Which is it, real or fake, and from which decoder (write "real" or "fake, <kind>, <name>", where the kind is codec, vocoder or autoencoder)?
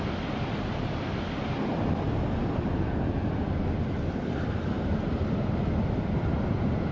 real